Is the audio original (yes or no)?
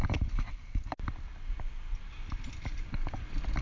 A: yes